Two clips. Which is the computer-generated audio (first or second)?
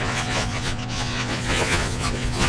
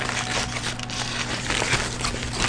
first